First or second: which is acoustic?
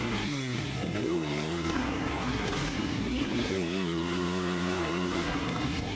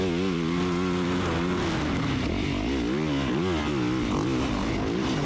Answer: second